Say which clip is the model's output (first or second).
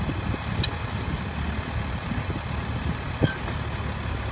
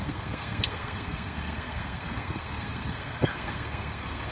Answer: second